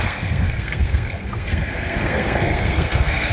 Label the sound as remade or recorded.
remade